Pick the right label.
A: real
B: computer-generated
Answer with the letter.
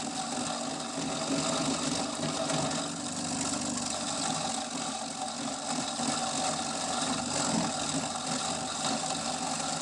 A